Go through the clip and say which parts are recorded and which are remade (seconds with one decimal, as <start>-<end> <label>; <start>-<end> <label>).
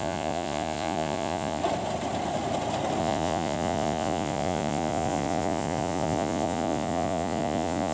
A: 0.0-1.6 remade; 1.6-3.0 recorded; 3.0-7.9 remade